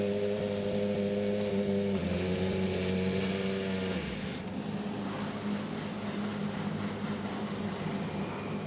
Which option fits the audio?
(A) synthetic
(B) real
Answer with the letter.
B